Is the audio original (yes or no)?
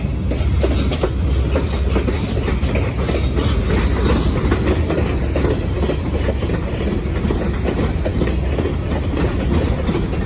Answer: yes